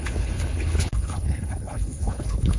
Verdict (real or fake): fake